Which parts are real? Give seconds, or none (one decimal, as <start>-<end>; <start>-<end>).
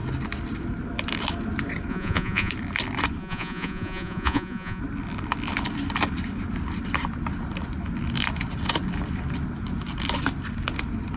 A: 0.0-1.9; 2.5-3.2; 4.8-11.2